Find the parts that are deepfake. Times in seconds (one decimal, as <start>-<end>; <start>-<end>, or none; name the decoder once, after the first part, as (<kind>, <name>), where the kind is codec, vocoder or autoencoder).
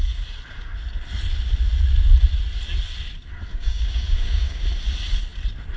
3.5-4.6 (codec, DAC)